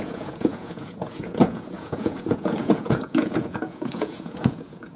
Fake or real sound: fake